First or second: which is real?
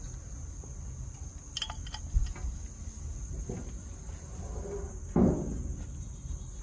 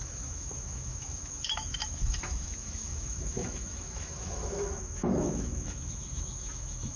first